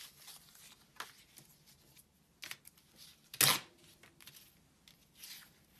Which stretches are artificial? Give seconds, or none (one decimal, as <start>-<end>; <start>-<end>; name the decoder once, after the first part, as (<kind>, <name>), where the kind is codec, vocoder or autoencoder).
none